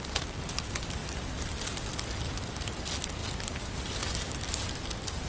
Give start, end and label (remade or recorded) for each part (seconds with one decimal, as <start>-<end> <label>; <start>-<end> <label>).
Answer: 0.0-5.3 recorded